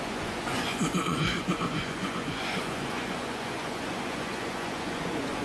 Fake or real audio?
fake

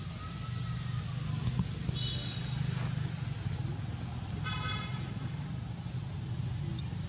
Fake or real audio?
real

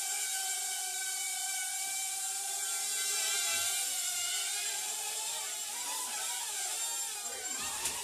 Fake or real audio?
fake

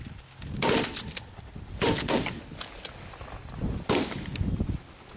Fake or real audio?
real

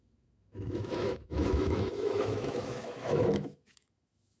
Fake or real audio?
fake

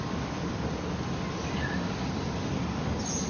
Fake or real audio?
real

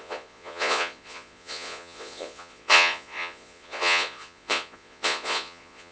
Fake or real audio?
fake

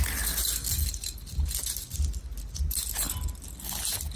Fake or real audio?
real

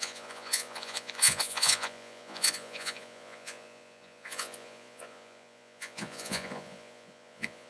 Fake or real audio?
fake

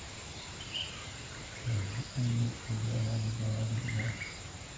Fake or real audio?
fake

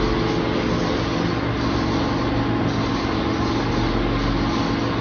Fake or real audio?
real